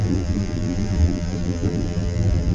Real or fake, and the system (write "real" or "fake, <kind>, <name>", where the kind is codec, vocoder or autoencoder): fake, vocoder, BigVGAN v2